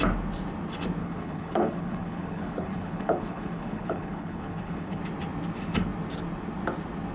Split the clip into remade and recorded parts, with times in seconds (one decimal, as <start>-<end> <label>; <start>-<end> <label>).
0.0-1.0 recorded; 1.0-5.0 remade; 5.0-7.1 recorded